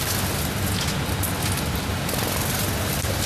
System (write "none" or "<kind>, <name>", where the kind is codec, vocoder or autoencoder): none